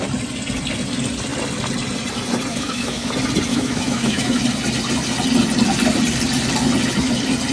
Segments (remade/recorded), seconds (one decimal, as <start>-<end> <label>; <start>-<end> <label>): 0.0-2.5 recorded; 2.5-3.1 remade; 3.1-3.5 recorded; 3.5-4.4 remade; 4.4-7.5 recorded